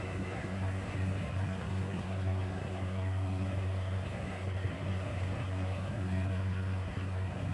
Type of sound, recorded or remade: remade